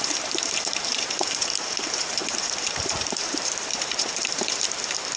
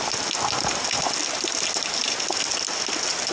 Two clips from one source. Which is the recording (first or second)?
second